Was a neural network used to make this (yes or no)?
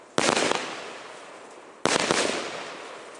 no